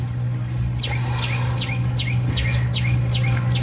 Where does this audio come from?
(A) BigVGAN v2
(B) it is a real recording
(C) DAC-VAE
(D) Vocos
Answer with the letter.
B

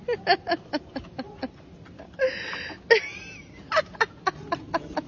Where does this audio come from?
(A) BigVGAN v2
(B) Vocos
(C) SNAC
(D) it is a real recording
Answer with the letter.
D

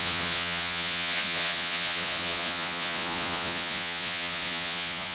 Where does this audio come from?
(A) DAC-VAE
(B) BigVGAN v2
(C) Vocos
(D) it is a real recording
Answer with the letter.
C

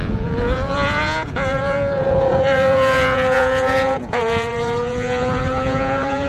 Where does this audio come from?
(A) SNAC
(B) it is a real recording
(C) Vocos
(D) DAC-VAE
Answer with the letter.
C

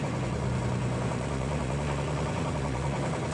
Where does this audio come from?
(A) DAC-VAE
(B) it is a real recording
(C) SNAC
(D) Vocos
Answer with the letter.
D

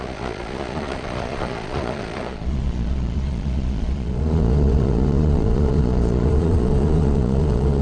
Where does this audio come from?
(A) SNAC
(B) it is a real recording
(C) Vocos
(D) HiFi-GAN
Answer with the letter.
C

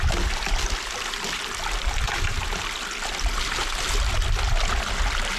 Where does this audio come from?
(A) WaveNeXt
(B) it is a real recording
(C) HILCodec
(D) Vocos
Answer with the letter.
B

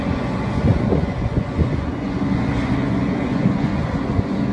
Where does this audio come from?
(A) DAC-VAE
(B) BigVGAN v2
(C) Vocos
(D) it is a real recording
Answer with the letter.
C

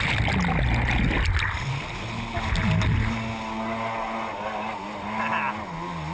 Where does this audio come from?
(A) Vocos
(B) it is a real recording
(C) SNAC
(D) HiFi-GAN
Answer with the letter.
B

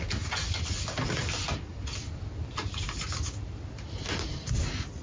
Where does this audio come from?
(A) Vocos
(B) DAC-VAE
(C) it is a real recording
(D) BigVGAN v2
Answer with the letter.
C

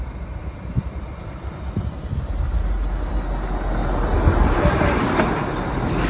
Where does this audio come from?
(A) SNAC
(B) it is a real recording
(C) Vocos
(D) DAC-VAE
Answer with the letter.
B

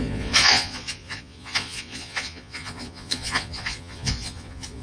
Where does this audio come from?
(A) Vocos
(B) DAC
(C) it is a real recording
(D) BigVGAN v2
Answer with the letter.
A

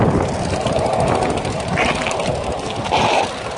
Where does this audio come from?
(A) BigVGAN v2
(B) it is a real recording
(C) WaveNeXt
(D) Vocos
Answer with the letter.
B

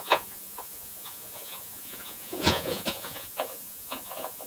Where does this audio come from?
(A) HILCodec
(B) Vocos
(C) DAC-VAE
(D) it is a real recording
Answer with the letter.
B